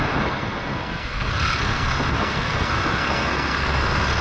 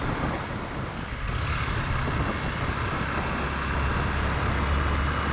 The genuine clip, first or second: second